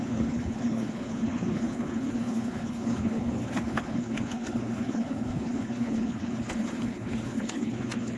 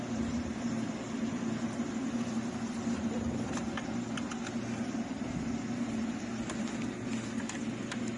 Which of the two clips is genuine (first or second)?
second